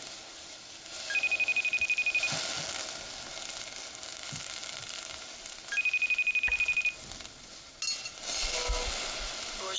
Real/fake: real